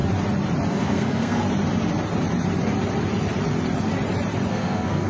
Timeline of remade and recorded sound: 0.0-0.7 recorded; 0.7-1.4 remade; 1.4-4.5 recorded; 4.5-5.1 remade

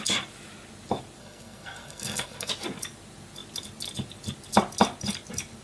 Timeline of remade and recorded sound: 0.0-1.2 recorded; 1.2-2.5 remade; 2.5-5.6 recorded

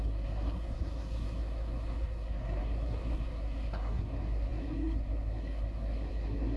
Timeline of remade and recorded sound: 0.0-6.6 remade

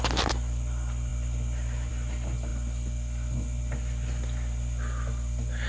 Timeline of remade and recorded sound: 0.0-5.7 recorded

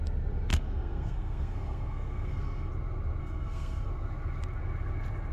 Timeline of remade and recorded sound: 0.0-0.5 recorded; 0.5-2.7 remade; 2.7-3.2 recorded; 3.2-3.9 remade; 3.9-5.3 recorded